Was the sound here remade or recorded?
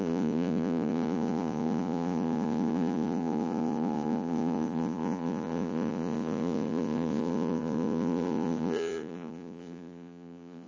remade